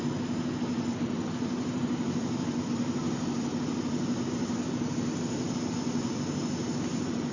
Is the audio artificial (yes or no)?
no